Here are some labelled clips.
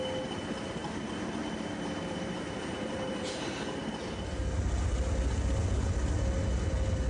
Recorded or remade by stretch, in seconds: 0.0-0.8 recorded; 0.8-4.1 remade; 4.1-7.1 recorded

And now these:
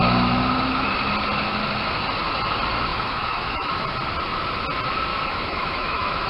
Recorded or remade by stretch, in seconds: 0.0-2.9 recorded; 2.9-3.7 remade; 3.7-5.1 recorded; 5.1-6.3 remade

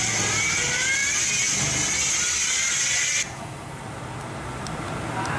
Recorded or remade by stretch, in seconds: 0.0-5.4 recorded

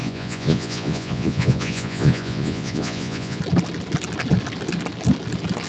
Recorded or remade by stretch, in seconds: 0.0-3.4 remade; 3.4-5.7 recorded

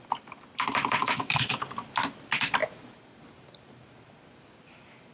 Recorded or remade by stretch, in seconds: 0.0-1.0 recorded; 1.0-1.6 remade; 1.6-5.1 recorded

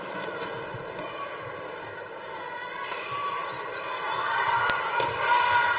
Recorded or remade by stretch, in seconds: 0.0-5.8 recorded

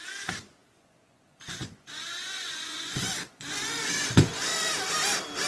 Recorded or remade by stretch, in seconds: 0.0-4.5 remade; 4.5-5.5 recorded